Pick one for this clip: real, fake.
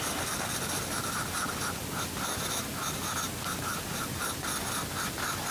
real